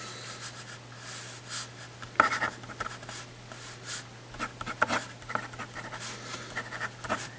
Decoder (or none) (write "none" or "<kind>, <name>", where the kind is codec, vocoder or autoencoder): none